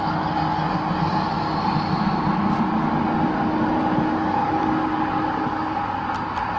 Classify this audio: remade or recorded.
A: recorded